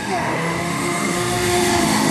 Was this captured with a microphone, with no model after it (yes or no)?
no